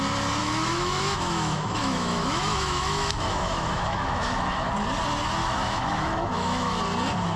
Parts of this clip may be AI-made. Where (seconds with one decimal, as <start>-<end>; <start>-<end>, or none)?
0.4-4.7; 5.4-6.8